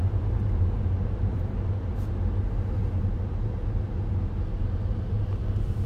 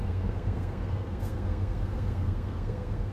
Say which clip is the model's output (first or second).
second